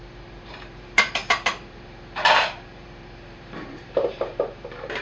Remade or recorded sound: remade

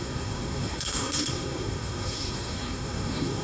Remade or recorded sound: remade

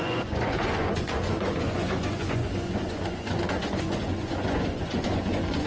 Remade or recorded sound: remade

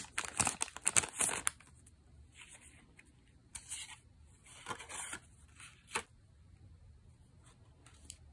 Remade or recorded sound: recorded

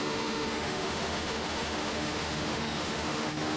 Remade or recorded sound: remade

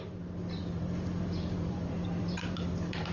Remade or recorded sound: remade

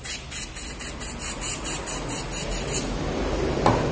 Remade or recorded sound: recorded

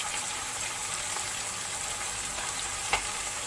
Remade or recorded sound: remade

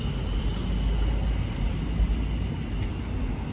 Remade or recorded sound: recorded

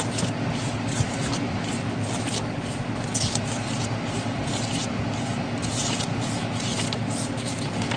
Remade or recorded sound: recorded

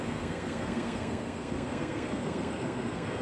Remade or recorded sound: remade